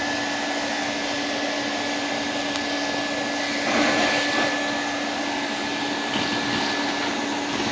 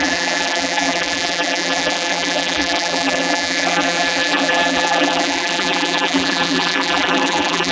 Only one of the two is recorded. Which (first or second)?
first